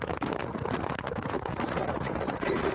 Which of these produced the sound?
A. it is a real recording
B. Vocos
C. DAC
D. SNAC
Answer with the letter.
B